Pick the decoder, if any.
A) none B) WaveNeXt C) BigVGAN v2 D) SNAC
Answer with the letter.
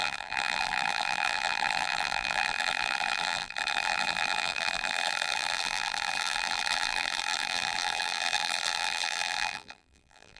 C